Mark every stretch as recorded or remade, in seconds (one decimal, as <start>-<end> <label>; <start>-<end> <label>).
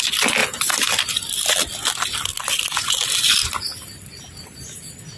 0.0-5.2 recorded